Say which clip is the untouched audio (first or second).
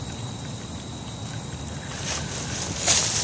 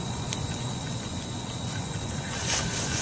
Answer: first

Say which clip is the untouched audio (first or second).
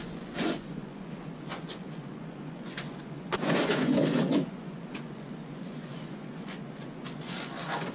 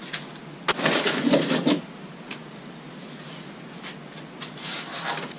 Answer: second